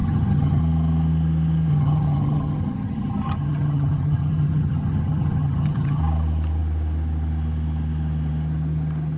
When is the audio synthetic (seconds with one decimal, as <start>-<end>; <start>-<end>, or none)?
0.0-0.6; 1.7-6.0